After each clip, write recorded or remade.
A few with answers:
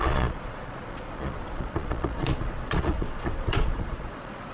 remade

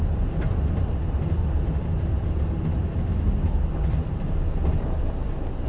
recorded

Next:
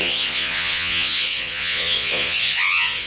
remade